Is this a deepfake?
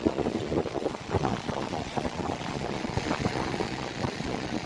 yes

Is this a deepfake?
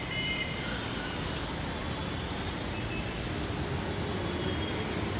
no